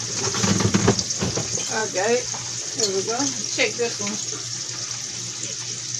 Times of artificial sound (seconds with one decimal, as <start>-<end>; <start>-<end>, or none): none